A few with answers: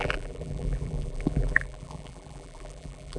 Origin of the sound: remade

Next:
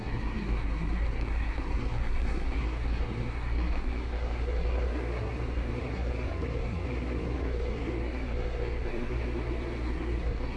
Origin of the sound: remade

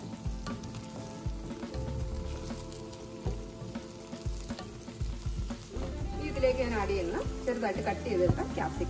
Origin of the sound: recorded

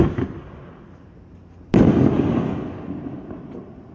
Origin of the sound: recorded